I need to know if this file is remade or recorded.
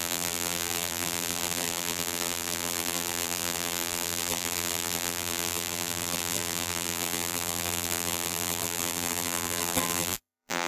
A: remade